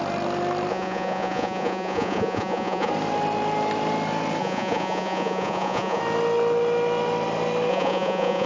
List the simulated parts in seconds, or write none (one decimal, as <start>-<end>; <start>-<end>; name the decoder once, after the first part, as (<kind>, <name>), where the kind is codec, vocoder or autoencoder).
0.7-2.9 (vocoder, Vocos); 4.4-6.0; 7.7-8.5